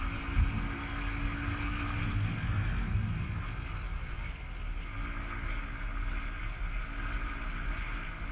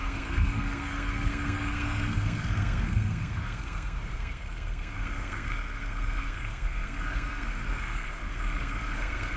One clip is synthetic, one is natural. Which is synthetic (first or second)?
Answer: second